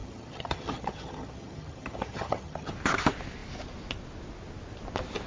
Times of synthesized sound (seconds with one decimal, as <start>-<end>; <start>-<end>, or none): 0.0-2.7